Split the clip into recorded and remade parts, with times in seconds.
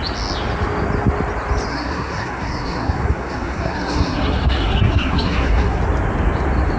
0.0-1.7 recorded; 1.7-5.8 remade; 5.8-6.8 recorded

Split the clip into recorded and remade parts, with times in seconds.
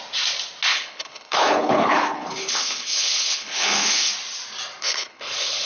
0.0-0.7 recorded; 0.7-4.1 remade; 4.1-4.8 recorded; 4.8-5.7 remade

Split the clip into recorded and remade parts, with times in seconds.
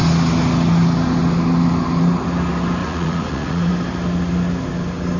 0.0-2.8 recorded; 2.8-3.7 remade; 3.7-5.2 recorded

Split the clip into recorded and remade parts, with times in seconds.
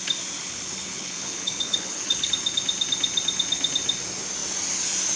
0.0-0.4 recorded; 0.4-2.3 remade; 2.3-5.2 recorded